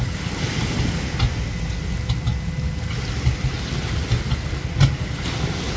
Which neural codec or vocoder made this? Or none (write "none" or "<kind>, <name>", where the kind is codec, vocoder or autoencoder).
none